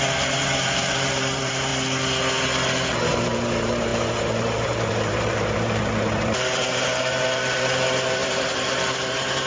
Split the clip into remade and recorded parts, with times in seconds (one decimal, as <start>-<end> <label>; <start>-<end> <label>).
0.0-1.7 remade; 1.7-3.1 recorded; 3.1-9.5 remade